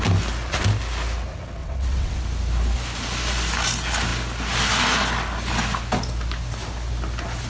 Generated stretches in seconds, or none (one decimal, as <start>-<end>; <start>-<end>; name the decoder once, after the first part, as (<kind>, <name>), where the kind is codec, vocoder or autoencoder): 1.6-2.2 (vocoder, WaveNeXt)